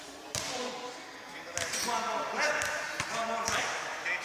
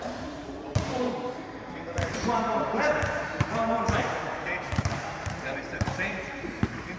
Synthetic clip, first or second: second